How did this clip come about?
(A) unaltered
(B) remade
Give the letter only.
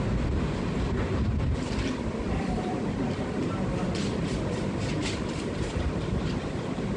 B